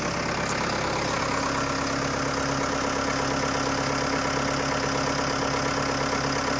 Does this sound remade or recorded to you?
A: recorded